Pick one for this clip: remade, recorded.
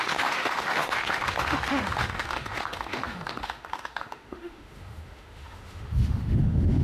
remade